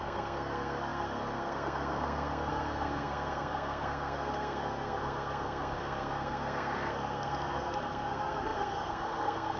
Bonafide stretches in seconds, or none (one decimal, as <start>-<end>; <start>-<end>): none